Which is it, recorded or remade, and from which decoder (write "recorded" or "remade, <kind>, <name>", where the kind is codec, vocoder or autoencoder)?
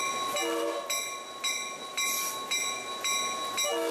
recorded